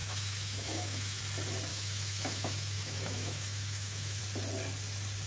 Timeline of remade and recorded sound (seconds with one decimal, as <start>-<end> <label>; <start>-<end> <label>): 0.0-1.2 remade; 1.2-1.7 recorded; 1.7-4.2 remade; 4.2-5.3 recorded